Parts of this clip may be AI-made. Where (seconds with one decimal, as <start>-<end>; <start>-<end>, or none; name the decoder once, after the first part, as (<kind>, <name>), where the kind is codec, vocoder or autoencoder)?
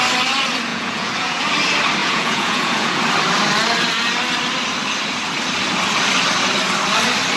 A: 0.7-1.4 (vocoder, Vocos); 2.0-3.0